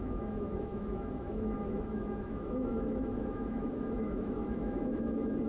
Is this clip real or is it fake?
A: fake